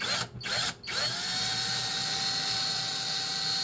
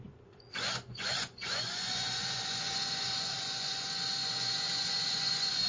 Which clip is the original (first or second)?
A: first